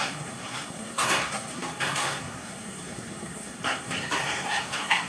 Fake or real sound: fake